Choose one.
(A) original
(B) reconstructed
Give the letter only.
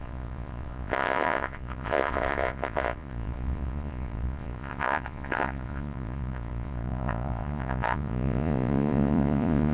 B